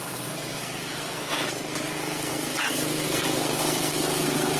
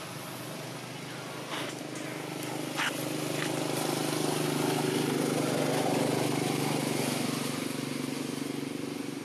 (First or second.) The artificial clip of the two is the first